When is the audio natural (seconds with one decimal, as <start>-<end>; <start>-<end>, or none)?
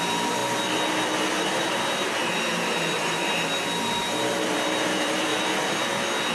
0.4-1.4; 3.2-3.8; 5.3-6.3